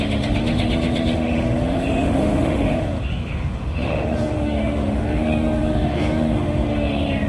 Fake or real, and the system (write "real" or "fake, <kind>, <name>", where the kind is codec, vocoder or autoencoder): fake, autoencoder, DAC-VAE